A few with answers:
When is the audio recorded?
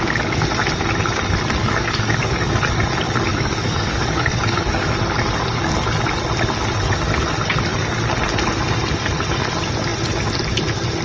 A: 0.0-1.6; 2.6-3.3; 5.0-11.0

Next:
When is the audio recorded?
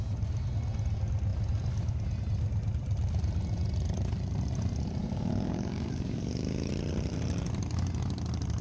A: 0.0-5.0; 6.7-8.6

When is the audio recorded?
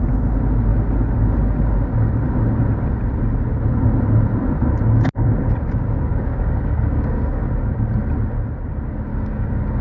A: 0.0-6.1; 7.5-9.1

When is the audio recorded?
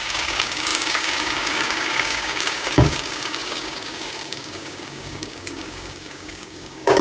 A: none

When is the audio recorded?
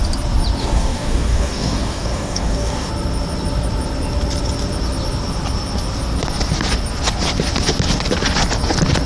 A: 0.0-0.6; 2.9-9.1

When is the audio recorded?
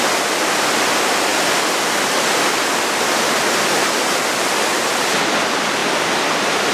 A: 0.0-6.7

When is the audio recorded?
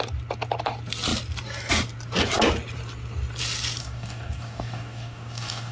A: 0.0-3.8